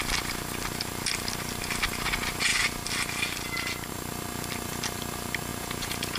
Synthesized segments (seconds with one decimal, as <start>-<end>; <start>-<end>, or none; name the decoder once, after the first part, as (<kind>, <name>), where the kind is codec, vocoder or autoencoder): 5.5-6.2 (vocoder, Vocos)